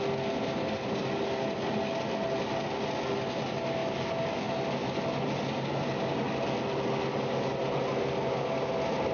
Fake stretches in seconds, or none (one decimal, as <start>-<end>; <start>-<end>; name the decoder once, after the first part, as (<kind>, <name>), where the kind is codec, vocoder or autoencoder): none